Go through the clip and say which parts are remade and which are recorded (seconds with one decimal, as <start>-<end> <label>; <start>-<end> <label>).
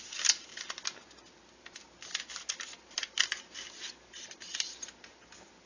0.0-5.7 recorded